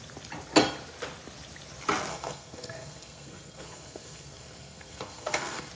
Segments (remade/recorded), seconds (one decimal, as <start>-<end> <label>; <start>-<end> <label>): 0.0-2.1 recorded; 2.1-5.7 remade